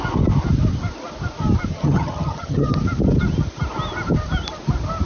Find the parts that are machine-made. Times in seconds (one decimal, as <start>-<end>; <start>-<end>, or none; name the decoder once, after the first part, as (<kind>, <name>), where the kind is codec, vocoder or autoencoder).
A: 1.7-2.8 (vocoder, HiFi-GAN)